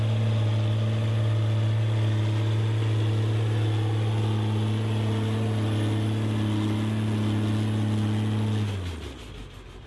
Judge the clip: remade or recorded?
recorded